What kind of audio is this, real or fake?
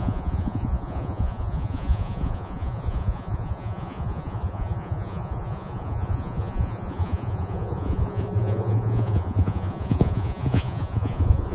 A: fake